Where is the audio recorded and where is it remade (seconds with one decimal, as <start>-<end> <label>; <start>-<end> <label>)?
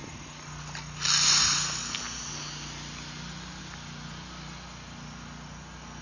0.0-6.0 recorded